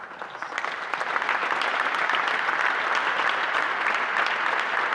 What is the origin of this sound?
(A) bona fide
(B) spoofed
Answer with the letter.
A